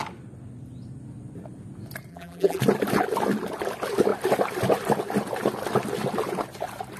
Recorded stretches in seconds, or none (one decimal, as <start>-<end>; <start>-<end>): 0.0-2.1; 2.6-7.0